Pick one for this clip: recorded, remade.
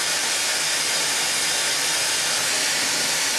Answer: recorded